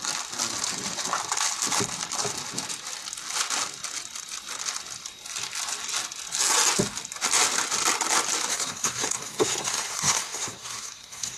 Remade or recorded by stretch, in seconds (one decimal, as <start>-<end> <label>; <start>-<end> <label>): 0.0-8.5 recorded; 8.5-11.4 remade

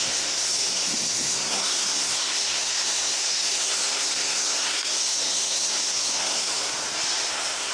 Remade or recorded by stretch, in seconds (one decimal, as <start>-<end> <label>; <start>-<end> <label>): 0.0-6.7 remade; 6.7-7.3 recorded; 7.3-7.7 remade